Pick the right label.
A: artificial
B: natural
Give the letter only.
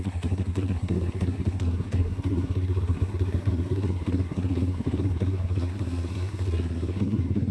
A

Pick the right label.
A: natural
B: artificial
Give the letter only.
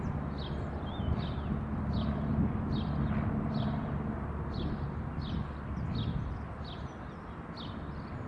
A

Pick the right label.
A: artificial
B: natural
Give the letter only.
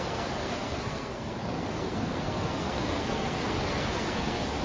A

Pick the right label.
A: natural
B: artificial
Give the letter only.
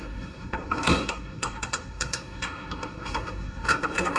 B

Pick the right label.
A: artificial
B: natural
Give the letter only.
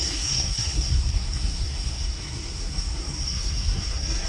A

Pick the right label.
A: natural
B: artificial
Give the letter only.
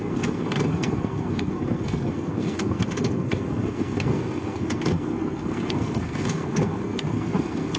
B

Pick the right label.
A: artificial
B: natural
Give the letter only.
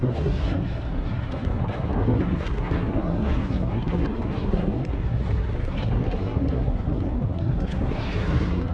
A